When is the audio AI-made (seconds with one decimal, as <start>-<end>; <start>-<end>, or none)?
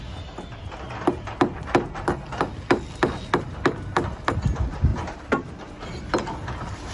4.9-5.6